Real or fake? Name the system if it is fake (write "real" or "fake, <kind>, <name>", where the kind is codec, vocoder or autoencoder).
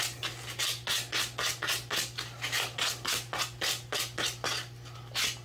real